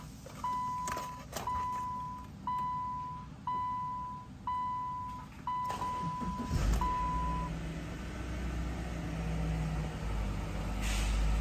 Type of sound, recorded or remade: recorded